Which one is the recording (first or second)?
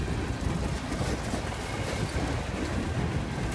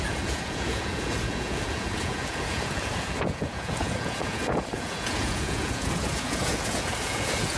first